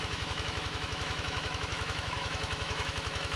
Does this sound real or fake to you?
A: fake